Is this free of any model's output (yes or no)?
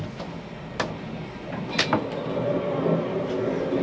yes